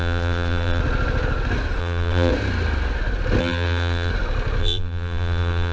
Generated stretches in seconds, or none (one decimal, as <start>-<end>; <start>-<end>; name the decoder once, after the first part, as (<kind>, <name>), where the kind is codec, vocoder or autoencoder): 0.0-0.8 (vocoder, BigVGAN v2); 1.8-2.3; 3.4-4.1; 4.6-5.7